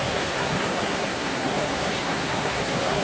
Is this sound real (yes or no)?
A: no